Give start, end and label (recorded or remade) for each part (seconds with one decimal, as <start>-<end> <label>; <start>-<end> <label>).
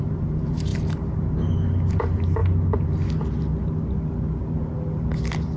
0.0-0.7 remade; 0.7-1.9 recorded; 1.9-2.4 remade; 2.4-5.6 recorded